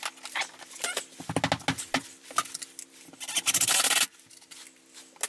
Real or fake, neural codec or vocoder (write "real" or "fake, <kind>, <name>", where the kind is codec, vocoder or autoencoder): real